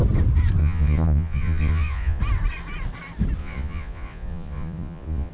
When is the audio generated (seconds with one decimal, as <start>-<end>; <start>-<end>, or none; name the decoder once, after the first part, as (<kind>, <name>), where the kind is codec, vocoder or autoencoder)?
0.6-2.2 (vocoder, Vocos); 3.4-5.3